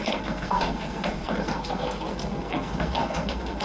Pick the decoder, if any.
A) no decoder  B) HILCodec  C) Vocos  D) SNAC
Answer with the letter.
D